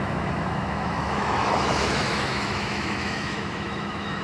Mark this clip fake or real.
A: fake